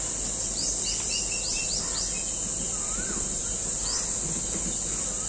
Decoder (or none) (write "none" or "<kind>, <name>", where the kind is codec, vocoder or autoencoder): none